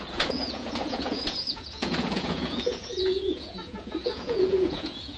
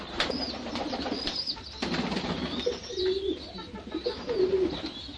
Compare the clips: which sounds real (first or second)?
second